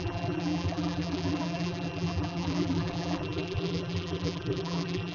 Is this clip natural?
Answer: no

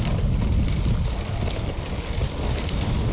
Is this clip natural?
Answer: yes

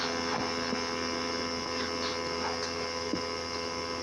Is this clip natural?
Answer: yes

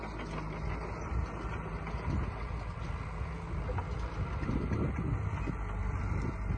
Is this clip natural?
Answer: yes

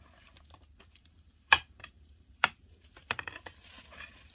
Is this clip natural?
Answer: no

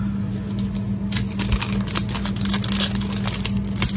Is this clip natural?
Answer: yes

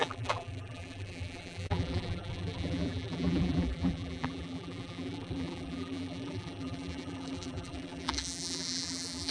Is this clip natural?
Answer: no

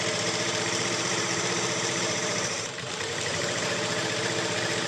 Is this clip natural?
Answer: no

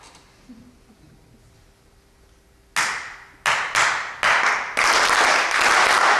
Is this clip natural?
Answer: yes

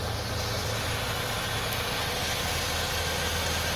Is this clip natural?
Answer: yes